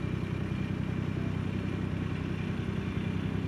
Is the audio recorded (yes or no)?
yes